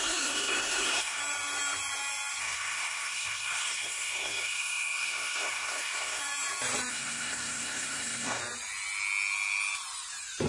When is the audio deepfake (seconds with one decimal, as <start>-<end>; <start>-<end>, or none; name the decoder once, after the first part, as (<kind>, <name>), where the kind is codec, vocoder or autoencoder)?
0.0-1.2 (codec, SNAC); 2.4-6.2; 6.9-8.4

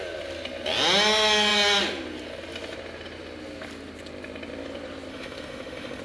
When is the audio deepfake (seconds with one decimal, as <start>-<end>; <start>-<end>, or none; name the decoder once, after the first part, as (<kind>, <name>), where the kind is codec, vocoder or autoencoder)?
5.1-6.0 (autoencoder, DAC-VAE)